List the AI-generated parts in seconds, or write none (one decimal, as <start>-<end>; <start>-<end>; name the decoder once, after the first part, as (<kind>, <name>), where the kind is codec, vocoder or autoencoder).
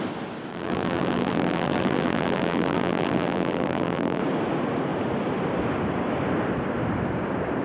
0.5-4.2 (vocoder, BigVGAN v2)